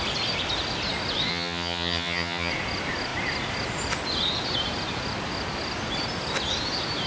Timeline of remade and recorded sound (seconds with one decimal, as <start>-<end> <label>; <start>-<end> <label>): 0.0-1.3 recorded; 1.3-2.5 remade; 2.5-7.1 recorded

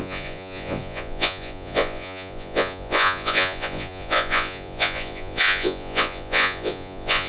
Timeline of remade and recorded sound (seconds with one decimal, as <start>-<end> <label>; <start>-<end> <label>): 0.0-7.3 remade

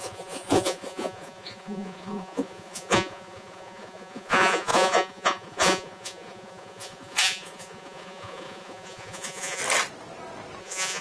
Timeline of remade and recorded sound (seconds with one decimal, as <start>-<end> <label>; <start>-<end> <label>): 0.0-9.6 remade; 9.6-10.6 recorded; 10.6-11.0 remade

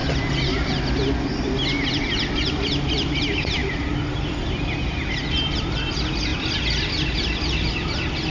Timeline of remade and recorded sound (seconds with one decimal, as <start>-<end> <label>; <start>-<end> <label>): 0.0-8.3 recorded

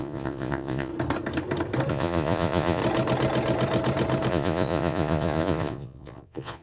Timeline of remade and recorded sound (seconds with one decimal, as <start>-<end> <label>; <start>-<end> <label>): 0.0-0.9 remade; 0.9-1.9 recorded; 1.9-2.8 remade; 2.8-4.3 recorded; 4.3-6.6 remade

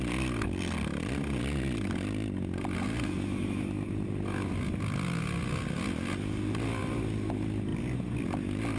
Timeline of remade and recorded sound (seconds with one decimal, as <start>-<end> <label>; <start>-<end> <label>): 0.0-8.8 recorded

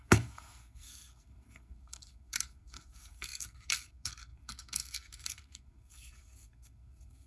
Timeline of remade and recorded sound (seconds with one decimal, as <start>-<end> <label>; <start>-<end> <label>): 0.0-7.3 remade